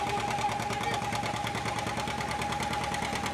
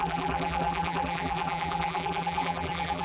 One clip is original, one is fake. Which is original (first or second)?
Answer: first